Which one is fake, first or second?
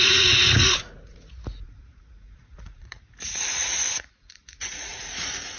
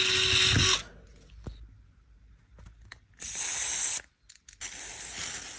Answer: first